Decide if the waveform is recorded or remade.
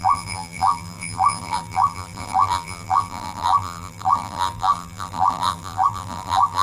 remade